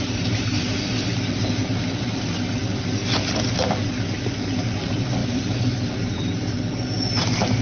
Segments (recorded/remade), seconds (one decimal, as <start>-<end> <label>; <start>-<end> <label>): 0.0-3.0 remade; 3.0-4.3 recorded; 4.3-7.6 remade